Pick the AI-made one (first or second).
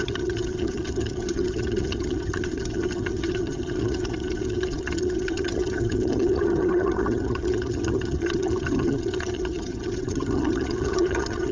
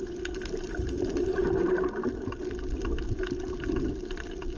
first